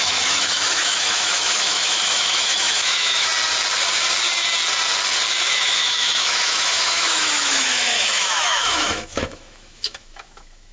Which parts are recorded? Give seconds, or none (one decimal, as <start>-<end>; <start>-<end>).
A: 3.3-5.3